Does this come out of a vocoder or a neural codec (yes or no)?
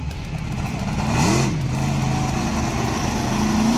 no